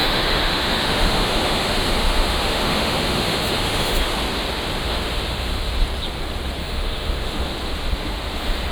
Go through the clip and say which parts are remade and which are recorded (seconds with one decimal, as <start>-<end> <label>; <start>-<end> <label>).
0.0-4.1 remade; 4.1-4.8 recorded; 4.8-5.7 remade; 5.7-6.6 recorded; 6.6-7.4 remade; 7.4-8.7 recorded